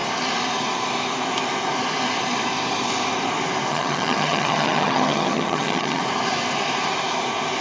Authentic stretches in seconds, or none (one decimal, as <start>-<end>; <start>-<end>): 0.0-3.7; 6.0-7.6